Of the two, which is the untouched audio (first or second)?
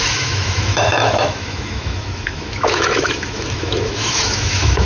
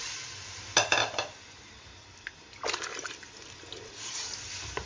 second